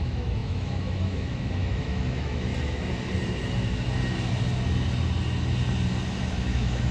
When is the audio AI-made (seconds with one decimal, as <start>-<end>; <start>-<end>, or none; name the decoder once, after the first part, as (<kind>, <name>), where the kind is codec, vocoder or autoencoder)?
0.0-2.5 (autoencoder, DAC-VAE); 6.3-6.9